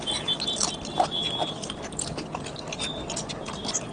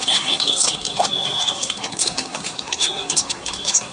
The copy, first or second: second